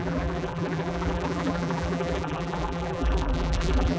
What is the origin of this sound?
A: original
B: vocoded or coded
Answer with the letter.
B